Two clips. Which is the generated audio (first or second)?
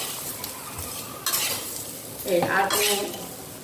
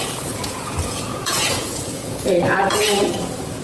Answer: second